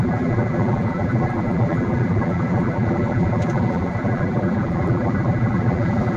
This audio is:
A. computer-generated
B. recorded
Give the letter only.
A